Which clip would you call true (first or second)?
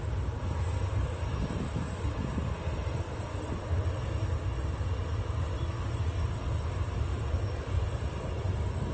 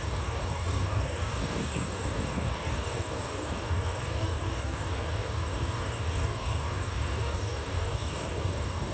first